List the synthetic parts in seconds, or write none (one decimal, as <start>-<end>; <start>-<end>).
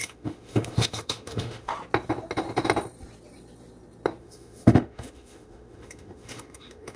0.0-1.7; 4.2-7.0